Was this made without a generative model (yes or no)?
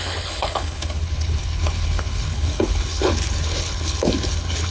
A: no